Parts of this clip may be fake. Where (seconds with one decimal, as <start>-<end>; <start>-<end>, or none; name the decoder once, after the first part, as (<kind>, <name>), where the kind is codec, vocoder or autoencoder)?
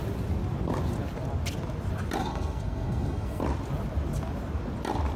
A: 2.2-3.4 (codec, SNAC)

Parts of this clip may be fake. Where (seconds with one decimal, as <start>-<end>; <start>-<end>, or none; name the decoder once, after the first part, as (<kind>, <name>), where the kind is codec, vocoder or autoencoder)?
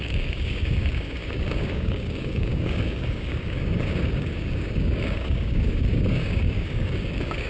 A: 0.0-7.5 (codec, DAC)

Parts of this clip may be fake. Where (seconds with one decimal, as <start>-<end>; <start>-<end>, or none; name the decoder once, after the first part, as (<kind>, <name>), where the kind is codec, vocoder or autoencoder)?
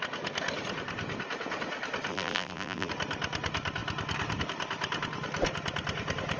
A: 2.1-2.9 (vocoder, BigVGAN v2)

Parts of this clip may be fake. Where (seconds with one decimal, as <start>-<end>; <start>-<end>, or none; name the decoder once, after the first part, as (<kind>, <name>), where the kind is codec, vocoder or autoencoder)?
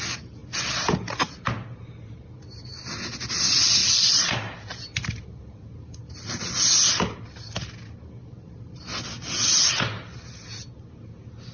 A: 3.8-6.6 (vocoder, BigVGAN v2); 8.3-8.8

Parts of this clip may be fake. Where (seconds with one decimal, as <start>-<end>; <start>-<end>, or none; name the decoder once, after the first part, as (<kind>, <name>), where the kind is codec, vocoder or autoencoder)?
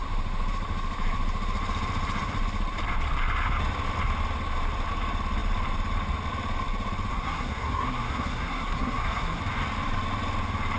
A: 7.1-9.4 (codec, SNAC)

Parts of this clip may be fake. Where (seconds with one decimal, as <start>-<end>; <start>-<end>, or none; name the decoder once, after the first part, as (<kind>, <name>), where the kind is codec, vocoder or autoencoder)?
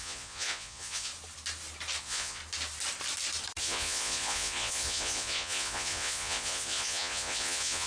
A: 0.0-1.1 (vocoder, Vocos); 2.0-2.4; 3.6-7.9